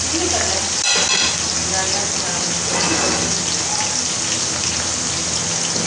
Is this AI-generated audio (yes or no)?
no